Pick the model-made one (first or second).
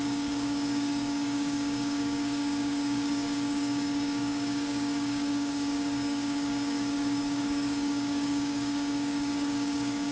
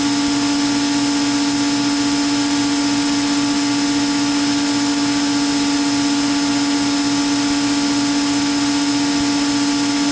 first